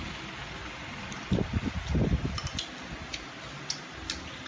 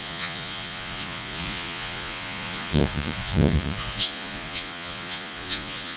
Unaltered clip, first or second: first